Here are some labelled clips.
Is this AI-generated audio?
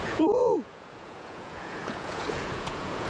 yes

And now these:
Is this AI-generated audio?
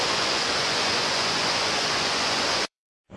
yes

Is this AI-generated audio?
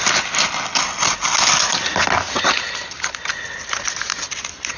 no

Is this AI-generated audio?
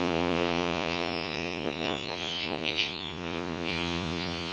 yes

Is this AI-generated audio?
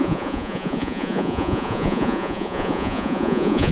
yes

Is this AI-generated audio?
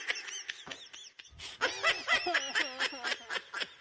no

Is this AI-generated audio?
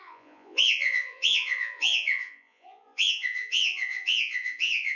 yes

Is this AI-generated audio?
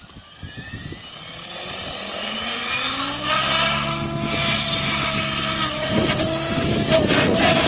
no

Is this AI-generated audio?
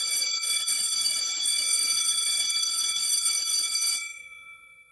yes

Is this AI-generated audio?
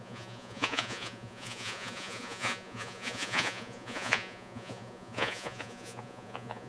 yes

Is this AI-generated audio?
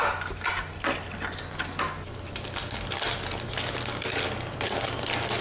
no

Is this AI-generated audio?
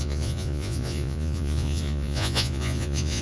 yes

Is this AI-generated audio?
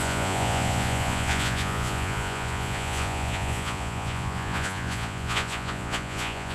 yes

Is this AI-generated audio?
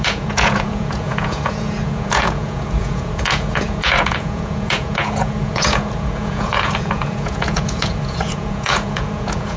yes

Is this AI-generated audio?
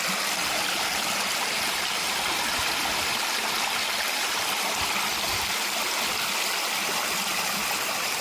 no